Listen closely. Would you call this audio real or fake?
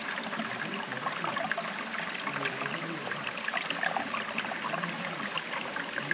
real